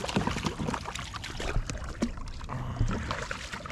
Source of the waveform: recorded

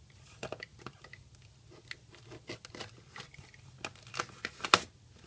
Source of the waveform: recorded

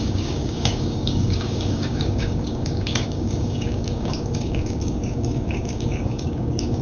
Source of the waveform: remade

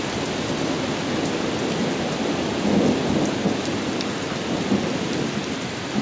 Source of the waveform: recorded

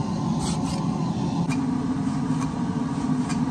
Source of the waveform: recorded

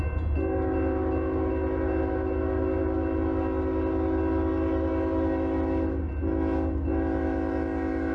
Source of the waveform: recorded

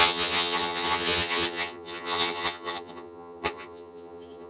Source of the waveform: remade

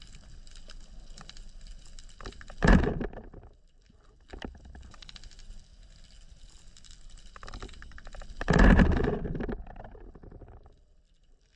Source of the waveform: recorded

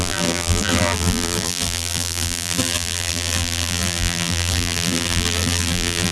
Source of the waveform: remade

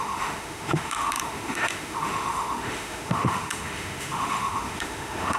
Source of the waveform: remade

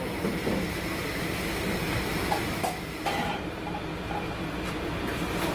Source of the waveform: recorded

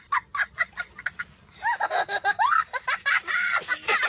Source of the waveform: recorded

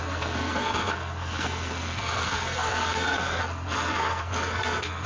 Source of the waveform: remade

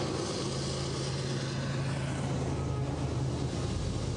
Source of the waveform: recorded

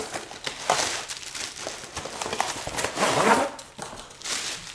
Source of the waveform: recorded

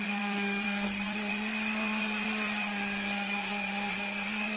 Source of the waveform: remade